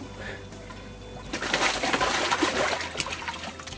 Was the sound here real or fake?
real